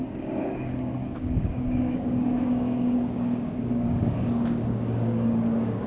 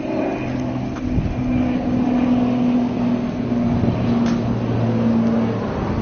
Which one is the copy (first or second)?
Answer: first